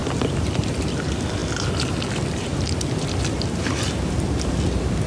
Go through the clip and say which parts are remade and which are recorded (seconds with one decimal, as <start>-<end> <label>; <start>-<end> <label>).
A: 0.0-5.1 recorded